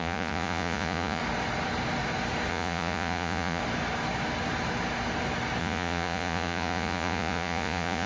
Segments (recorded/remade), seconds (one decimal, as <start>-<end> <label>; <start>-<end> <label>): 0.0-1.2 remade; 1.2-2.5 recorded; 2.5-3.6 remade; 3.6-5.6 recorded; 5.6-8.1 remade

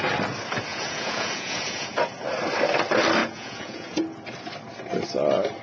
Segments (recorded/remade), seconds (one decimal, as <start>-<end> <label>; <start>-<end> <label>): 0.0-0.7 recorded; 0.7-2.0 remade; 2.0-3.2 recorded; 3.2-4.0 remade; 4.0-5.6 recorded

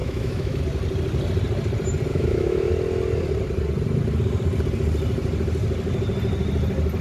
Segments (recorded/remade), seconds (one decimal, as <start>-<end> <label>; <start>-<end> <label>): 0.0-0.6 remade; 0.6-2.1 recorded; 2.1-2.7 remade; 2.7-7.0 recorded

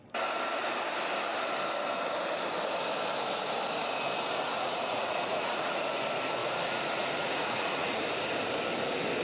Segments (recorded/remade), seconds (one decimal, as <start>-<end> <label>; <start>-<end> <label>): 0.0-4.4 recorded; 4.4-5.8 remade; 5.8-6.4 recorded; 6.4-8.0 remade; 8.0-9.2 recorded

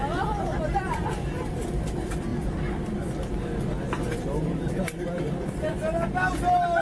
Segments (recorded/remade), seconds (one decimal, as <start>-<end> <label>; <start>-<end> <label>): 0.0-6.8 recorded

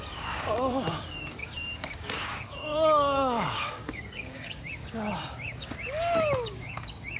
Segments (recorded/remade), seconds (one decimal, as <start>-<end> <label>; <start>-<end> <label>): 0.0-7.2 remade

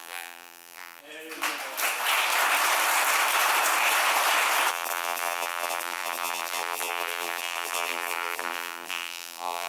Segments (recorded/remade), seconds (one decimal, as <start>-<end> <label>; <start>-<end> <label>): 0.0-1.0 remade; 1.0-4.7 recorded; 4.7-9.7 remade

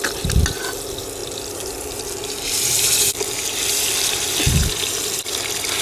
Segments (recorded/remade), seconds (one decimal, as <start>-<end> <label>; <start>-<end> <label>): 0.0-1.2 recorded; 1.2-4.7 remade; 4.7-5.8 recorded